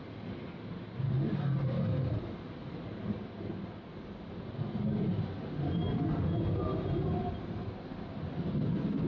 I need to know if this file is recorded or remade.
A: recorded